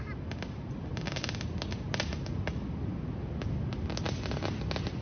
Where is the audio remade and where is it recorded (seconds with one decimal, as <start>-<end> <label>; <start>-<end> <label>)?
0.0-5.0 recorded